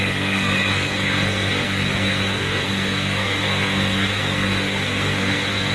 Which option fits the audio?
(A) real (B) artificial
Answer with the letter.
B